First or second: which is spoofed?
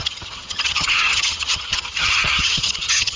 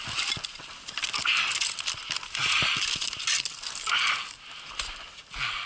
first